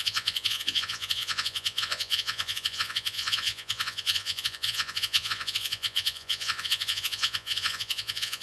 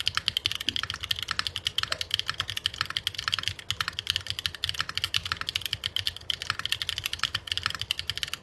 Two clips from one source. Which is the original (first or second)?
second